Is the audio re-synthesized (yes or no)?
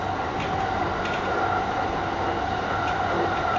no